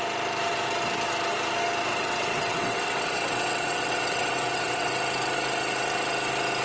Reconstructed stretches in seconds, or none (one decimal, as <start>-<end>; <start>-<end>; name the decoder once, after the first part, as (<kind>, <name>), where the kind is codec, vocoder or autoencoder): 1.9-4.9 (vocoder, WaveNeXt)